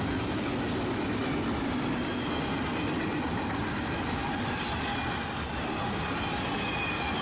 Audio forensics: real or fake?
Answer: real